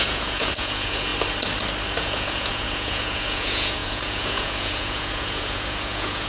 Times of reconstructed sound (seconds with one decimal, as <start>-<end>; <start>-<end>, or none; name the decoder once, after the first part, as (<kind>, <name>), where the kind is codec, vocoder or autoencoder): 0.0-1.1 (vocoder, Vocos); 2.0-6.3